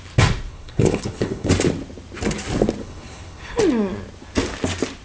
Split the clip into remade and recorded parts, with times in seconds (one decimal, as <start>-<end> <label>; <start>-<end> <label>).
0.0-0.5 recorded; 0.5-1.5 remade; 1.5-2.8 recorded; 2.8-3.6 remade; 3.6-5.0 recorded